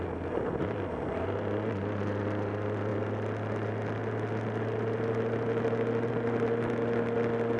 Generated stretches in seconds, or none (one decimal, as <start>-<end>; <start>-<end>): none